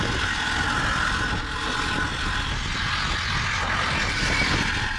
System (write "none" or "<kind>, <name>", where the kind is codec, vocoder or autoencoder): none